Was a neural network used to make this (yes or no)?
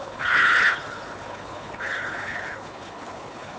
yes